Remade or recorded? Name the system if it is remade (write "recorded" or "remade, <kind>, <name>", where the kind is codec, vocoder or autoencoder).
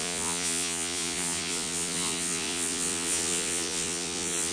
remade, vocoder, Vocos